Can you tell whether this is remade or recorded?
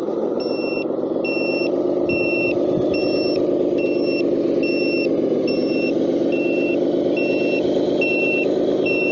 recorded